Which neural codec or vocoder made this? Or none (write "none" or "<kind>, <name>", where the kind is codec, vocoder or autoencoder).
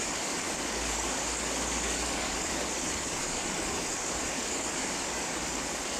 codec, DAC